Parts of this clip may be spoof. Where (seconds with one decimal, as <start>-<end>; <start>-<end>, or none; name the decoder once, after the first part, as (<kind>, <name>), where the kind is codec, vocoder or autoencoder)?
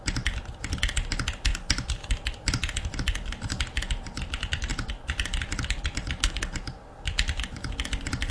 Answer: 1.5-2.1 (vocoder, BigVGAN v2); 4.7-5.8